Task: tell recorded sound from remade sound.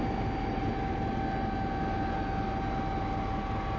recorded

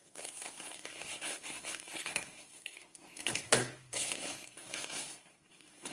remade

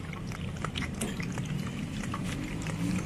remade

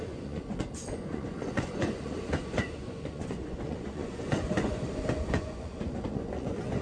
remade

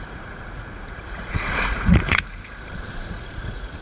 remade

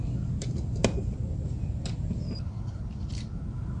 recorded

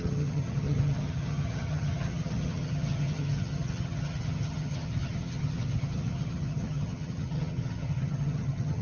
remade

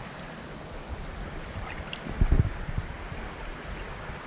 recorded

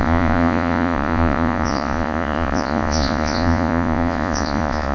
remade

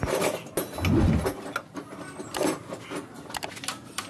recorded